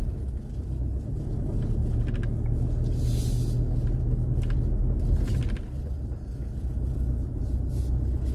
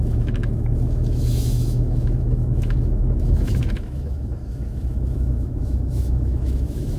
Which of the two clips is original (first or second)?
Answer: first